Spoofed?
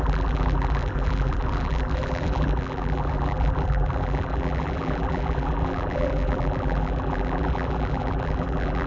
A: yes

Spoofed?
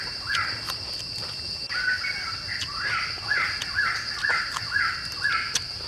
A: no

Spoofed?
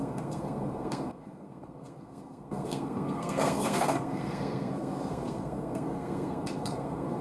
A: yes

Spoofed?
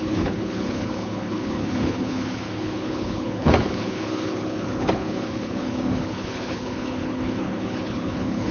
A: yes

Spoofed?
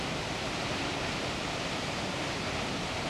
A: no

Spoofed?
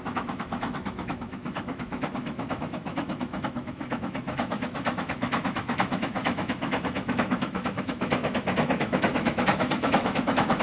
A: yes